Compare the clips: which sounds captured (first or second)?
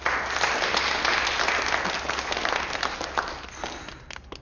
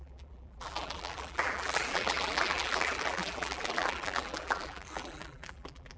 first